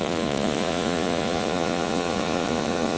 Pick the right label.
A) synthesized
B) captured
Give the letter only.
A